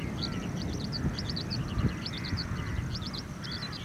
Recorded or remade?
recorded